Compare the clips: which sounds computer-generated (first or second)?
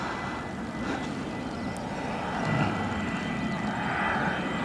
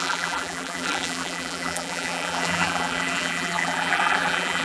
second